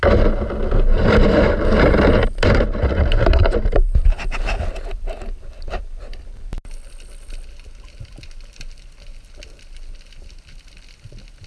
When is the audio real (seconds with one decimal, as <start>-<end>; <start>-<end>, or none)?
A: 0.0-1.2; 4.6-11.5